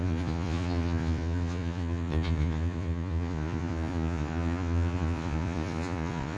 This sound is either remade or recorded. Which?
remade